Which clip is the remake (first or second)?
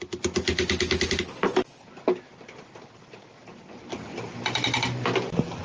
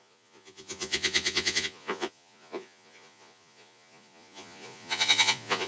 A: second